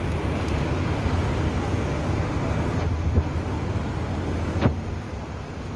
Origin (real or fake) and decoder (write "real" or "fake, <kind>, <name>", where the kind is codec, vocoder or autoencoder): real